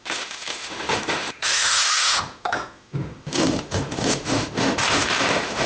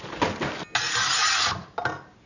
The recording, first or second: second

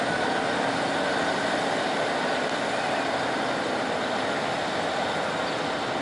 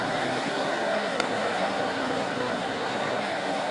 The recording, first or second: first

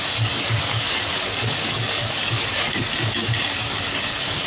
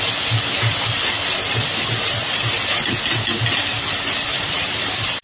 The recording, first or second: second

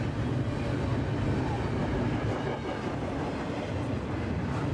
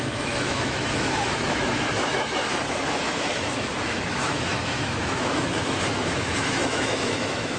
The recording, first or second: first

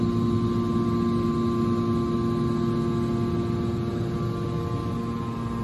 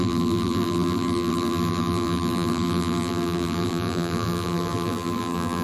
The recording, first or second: first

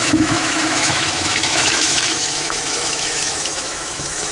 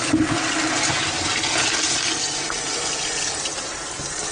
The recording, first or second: second